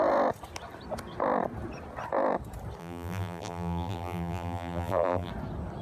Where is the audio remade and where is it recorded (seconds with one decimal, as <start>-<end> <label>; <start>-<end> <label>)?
0.0-2.8 recorded; 2.8-5.3 remade; 5.3-5.8 recorded